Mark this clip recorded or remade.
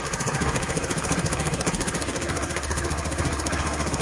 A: remade